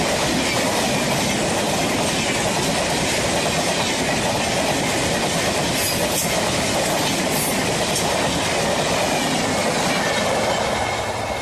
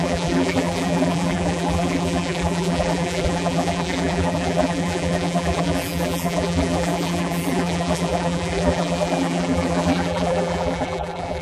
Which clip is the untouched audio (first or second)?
first